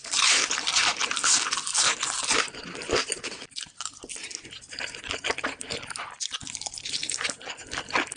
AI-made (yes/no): no